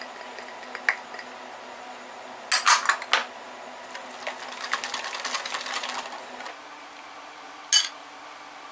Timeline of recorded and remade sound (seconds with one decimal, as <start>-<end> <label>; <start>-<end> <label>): 0.0-8.7 recorded